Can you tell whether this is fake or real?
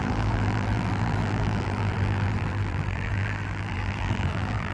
fake